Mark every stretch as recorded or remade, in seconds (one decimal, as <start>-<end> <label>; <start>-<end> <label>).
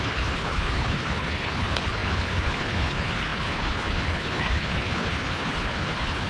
0.0-6.3 remade